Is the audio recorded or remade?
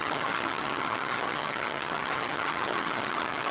remade